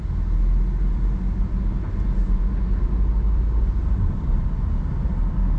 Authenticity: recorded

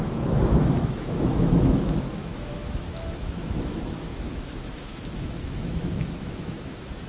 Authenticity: remade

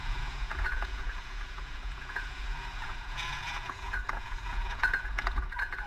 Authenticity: remade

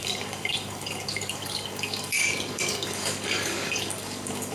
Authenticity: remade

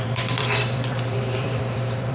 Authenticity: remade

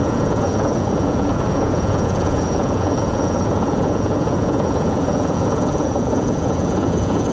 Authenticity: remade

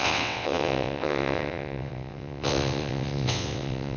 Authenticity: remade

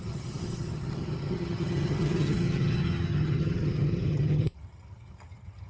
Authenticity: remade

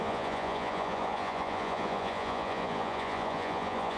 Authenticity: remade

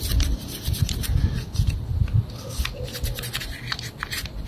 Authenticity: recorded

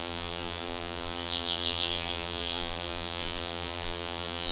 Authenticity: remade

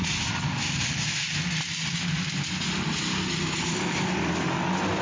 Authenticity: recorded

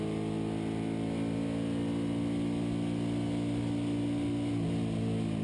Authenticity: recorded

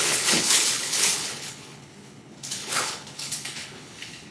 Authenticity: remade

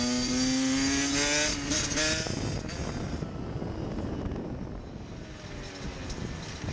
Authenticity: recorded